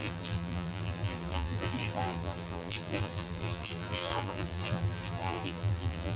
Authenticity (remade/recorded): remade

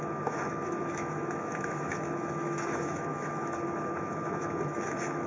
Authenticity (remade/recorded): remade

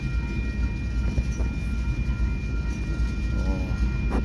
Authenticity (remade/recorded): recorded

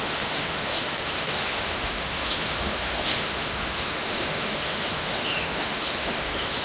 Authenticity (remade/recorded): remade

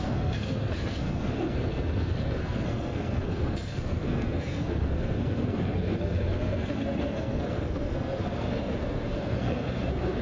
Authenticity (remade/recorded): remade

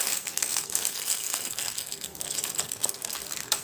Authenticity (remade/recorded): remade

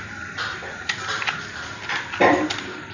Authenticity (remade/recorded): recorded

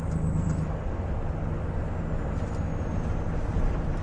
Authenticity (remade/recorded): recorded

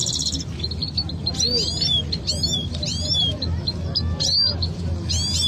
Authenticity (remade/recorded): recorded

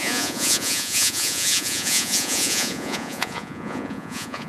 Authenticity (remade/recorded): remade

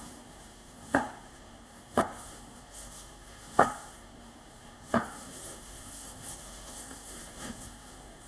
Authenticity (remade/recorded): remade